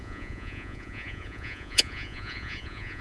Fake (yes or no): yes